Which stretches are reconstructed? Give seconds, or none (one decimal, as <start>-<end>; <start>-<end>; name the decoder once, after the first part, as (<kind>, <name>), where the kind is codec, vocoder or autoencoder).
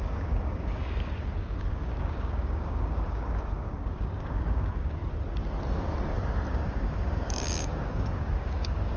0.0-5.0 (codec, DAC); 6.5-9.0